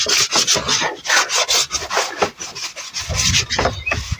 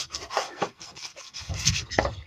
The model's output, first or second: second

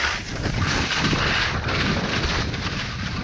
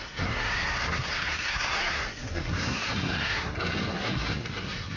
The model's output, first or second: second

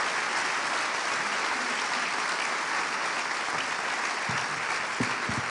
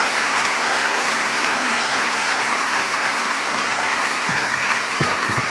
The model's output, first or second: second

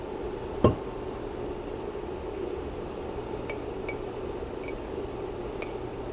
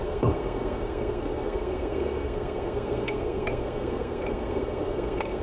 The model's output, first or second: second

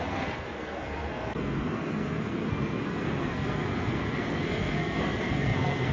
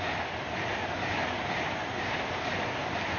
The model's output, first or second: first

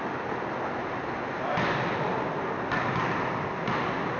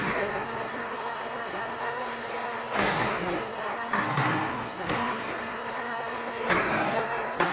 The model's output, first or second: second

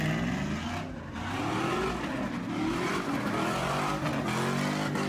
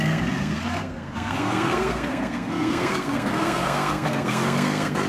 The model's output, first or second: second